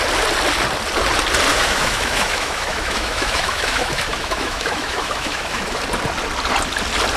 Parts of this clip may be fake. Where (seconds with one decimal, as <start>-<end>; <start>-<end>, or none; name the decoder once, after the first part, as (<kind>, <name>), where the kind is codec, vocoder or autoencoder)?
1.5-5.8 (autoencoder, DAC-VAE)